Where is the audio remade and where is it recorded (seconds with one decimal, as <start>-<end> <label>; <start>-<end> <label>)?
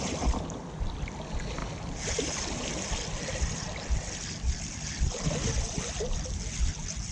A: 0.0-7.1 recorded